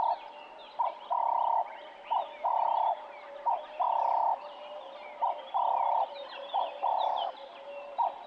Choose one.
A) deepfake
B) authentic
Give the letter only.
B